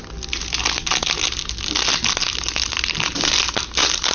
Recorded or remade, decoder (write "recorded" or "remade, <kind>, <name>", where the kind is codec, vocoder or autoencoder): recorded